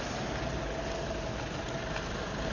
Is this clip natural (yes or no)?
yes